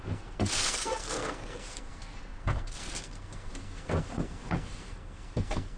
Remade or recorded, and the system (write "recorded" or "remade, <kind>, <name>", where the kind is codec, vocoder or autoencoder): remade, codec, SNAC